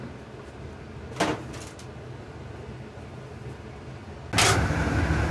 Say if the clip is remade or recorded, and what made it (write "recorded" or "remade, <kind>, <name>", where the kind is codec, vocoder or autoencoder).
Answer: recorded